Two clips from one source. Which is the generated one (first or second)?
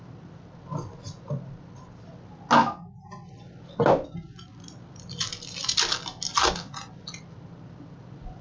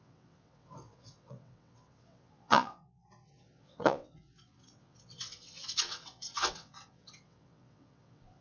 second